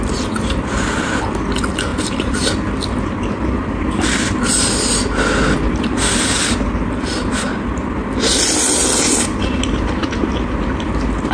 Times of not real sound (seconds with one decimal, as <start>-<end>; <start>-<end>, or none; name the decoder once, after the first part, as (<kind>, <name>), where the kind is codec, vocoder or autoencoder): none